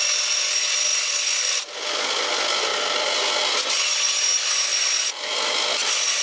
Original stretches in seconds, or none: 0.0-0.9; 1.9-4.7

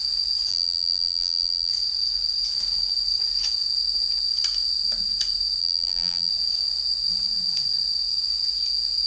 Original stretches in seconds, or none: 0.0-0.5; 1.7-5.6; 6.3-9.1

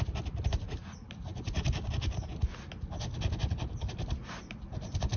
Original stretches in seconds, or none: 0.0-5.2

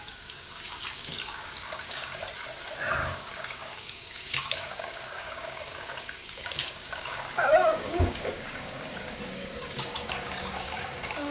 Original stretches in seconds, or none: 2.2-2.9

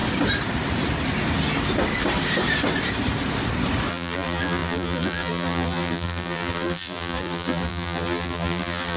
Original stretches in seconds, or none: 0.0-3.9